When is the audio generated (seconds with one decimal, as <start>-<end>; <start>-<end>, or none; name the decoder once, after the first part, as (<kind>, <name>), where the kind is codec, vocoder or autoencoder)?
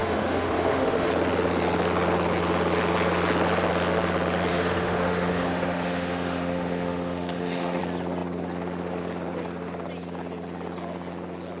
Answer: 0.0-1.1 (autoencoder, DAC-VAE); 4.5-7.8